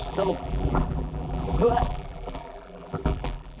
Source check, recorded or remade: remade